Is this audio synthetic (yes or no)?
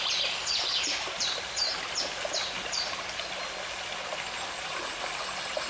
no